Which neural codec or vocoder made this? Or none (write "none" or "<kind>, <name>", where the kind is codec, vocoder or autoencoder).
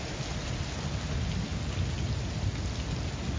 none